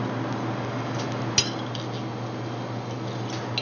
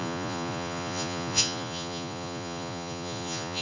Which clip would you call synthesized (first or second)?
second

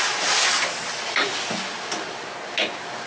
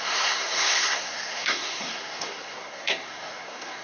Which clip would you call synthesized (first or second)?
second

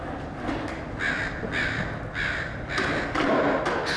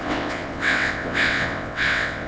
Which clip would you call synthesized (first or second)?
second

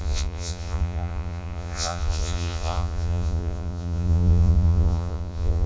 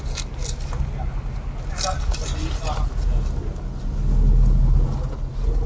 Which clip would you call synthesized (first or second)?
first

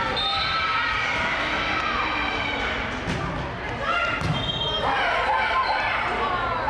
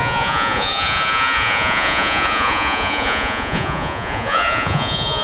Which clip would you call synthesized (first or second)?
second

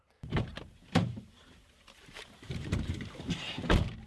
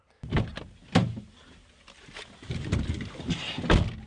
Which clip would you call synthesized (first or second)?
first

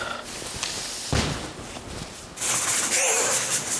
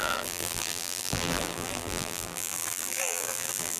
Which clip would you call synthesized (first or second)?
second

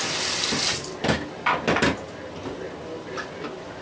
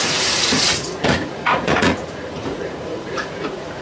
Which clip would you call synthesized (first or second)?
second